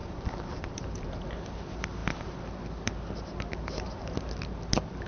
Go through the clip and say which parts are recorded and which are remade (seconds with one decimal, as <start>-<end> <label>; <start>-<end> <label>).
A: 0.0-0.8 remade; 0.8-5.1 recorded